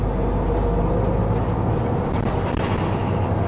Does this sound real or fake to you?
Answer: real